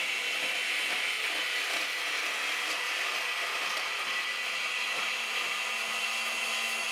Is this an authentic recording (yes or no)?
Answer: yes